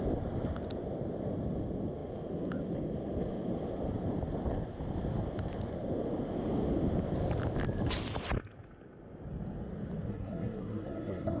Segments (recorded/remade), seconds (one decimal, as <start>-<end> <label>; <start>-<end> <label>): 0.0-10.1 recorded; 10.1-11.4 remade